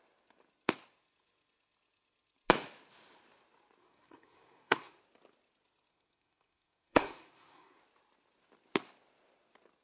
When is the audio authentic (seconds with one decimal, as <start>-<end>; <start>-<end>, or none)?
0.0-3.8; 5.0-5.9; 7.8-9.8